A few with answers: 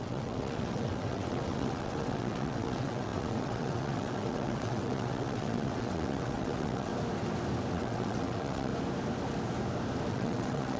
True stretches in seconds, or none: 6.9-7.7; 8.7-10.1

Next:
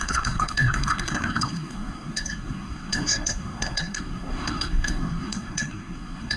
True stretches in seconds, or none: none

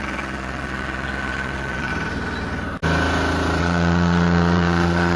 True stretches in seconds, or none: 1.9-3.6

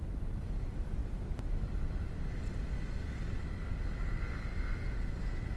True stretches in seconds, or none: 0.0-5.6

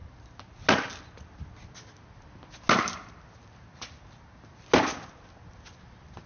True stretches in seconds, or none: 0.0-6.3